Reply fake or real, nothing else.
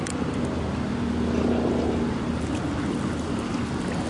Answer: real